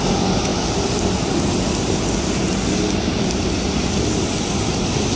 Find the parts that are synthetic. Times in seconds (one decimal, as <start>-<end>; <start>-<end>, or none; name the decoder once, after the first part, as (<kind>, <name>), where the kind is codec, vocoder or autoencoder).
0.5-1.4 (vocoder, BigVGAN v2); 3.1-4.8